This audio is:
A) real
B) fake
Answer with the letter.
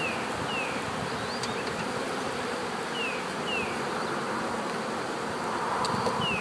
A